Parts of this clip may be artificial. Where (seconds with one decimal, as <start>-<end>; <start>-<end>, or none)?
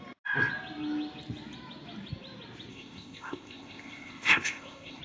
2.7-5.0